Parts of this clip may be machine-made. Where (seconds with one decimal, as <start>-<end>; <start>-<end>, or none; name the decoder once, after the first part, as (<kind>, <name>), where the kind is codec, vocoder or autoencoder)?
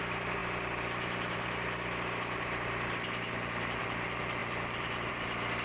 0.0-0.4 (vocoder, BigVGAN v2); 3.8-5.6